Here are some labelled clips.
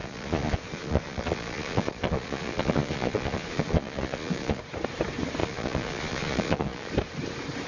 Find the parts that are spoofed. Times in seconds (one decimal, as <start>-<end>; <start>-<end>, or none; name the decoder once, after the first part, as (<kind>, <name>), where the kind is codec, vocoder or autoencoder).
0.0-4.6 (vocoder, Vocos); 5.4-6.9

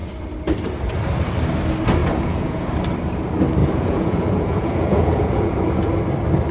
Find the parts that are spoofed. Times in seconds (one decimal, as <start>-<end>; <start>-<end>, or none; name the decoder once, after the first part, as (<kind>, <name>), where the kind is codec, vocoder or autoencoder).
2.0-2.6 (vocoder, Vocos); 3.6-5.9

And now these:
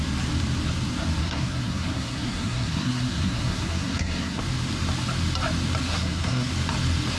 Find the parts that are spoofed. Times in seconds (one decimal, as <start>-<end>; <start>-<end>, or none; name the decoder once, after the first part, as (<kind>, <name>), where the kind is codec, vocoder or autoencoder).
1.2-4.4 (codec, SNAC); 5.8-6.5